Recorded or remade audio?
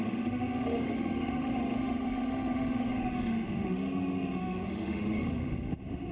remade